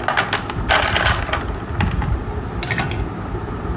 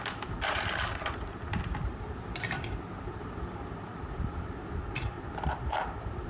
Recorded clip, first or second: first